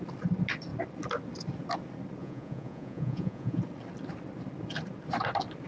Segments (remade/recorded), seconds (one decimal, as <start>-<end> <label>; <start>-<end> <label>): 0.0-2.2 recorded; 2.2-3.6 remade; 3.6-5.7 recorded